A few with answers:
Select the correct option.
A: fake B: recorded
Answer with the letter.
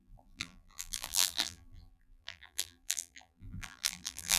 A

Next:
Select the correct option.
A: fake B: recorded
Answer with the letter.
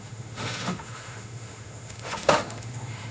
A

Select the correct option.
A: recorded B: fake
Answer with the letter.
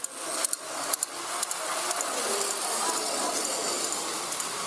A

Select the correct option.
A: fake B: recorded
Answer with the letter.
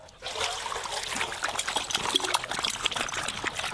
B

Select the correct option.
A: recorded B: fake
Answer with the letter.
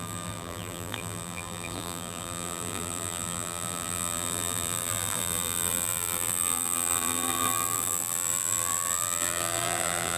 B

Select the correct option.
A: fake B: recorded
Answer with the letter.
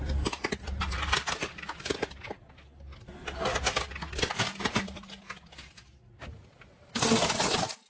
B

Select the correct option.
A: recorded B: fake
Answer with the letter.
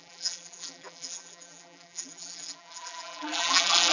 B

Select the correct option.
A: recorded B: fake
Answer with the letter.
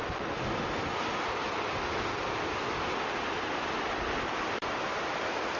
A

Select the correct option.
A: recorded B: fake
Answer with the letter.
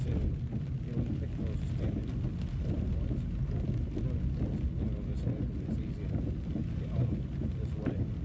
A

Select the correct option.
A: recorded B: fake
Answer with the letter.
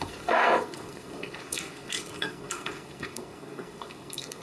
B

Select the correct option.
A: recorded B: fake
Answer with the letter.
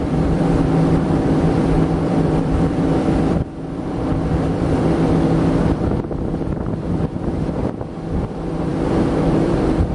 B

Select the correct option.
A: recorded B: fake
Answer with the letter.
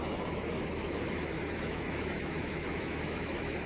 B